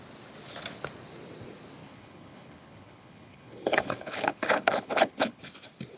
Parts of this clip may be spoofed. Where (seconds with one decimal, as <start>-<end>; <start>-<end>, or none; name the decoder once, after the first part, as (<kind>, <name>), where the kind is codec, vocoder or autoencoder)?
1.8-5.4 (codec, HILCodec)